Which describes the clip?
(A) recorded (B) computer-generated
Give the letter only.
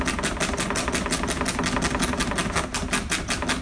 A